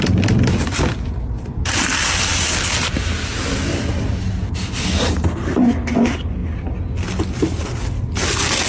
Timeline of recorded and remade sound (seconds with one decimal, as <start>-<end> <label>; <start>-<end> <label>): 0.0-8.7 recorded